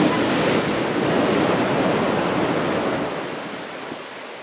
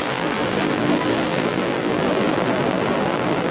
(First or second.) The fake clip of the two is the second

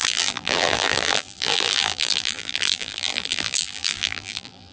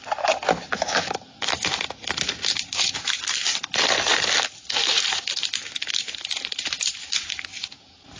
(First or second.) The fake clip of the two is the first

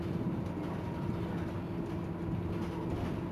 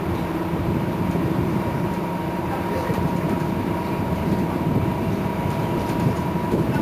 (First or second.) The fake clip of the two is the second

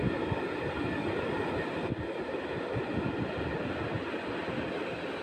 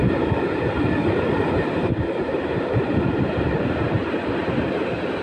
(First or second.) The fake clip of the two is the second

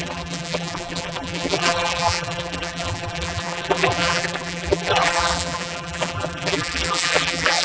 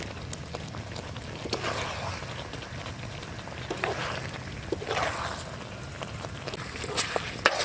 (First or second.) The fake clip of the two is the first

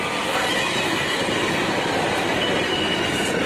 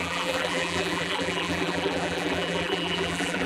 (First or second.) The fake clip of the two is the second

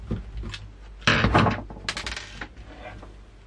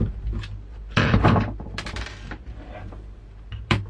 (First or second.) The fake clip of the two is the second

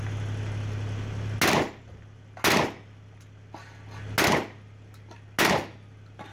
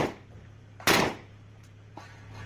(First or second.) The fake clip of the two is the second